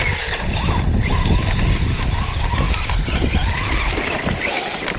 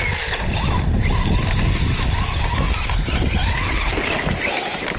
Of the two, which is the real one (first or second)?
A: second